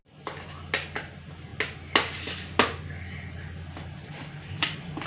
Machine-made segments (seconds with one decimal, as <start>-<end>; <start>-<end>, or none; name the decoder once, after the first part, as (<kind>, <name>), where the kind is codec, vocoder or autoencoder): none